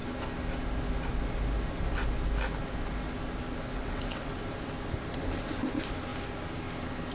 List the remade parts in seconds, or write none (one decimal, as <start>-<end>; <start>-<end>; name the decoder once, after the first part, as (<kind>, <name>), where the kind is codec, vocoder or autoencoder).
3.7-4.4 (vocoder, WaveNeXt)